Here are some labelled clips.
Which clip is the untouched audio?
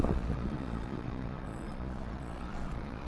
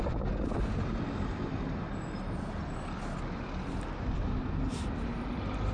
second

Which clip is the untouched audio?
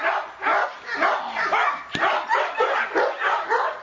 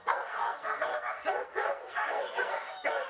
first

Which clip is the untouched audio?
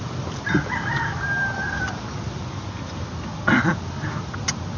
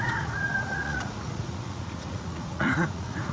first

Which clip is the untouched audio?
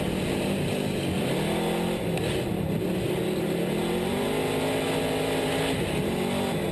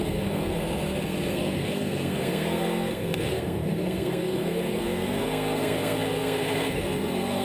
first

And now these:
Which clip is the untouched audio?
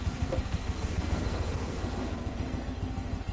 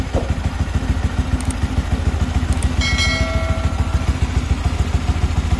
second